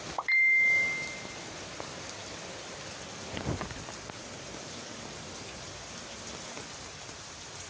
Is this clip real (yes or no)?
yes